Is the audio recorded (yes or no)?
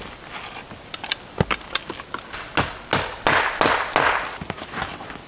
yes